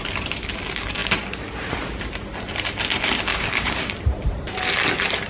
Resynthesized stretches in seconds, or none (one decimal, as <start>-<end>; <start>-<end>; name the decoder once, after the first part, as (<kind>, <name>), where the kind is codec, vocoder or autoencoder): 3.3-3.8 (codec, DAC)